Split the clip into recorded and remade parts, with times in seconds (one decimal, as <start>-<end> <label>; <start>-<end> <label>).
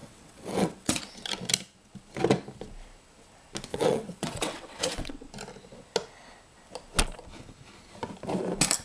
0.0-1.0 remade; 1.0-3.7 recorded; 3.7-5.3 remade; 5.3-8.8 recorded